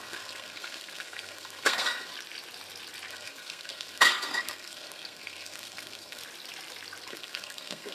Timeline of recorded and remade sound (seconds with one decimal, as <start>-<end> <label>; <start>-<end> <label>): 0.0-2.1 remade; 2.1-3.1 recorded; 3.1-6.2 remade; 6.2-7.1 recorded; 7.1-7.9 remade